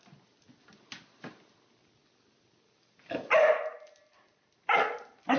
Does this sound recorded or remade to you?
recorded